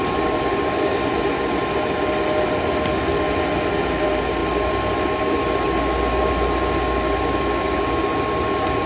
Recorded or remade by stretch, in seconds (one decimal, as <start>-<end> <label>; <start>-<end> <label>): 0.0-8.9 recorded